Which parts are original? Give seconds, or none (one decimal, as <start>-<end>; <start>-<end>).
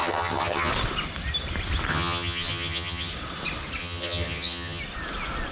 0.7-1.9; 3.1-3.8; 4.8-5.5